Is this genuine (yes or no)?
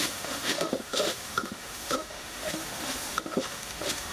no